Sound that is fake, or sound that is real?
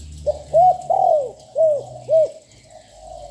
real